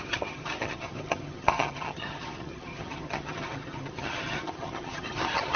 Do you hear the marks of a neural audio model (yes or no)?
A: yes